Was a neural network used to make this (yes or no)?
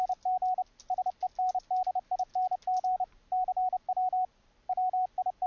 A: no